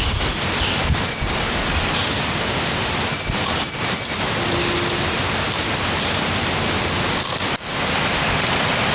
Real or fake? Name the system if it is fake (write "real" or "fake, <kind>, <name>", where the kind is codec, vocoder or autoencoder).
real